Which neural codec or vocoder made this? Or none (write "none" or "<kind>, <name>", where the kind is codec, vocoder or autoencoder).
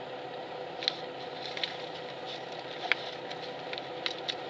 none